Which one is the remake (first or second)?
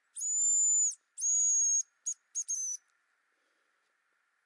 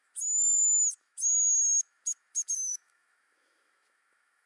second